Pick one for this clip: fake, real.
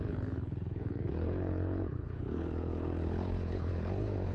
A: fake